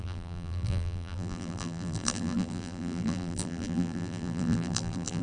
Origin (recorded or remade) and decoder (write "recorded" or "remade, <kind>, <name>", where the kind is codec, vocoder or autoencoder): remade, vocoder, BigVGAN v2